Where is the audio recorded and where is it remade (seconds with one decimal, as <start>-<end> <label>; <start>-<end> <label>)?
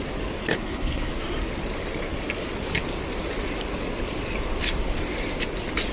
0.0-0.5 recorded; 0.5-1.1 remade; 1.1-5.9 recorded